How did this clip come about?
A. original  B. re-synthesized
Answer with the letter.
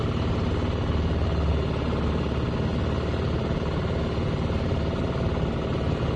A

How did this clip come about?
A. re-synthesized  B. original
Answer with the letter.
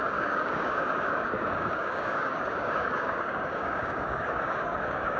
A